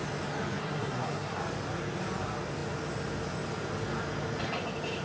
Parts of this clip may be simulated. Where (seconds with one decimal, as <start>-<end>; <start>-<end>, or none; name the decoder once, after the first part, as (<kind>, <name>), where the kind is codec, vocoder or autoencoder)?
0.6-1.4 (codec, SNAC)